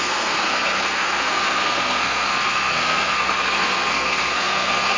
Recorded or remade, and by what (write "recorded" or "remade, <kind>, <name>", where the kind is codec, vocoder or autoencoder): remade, codec, SNAC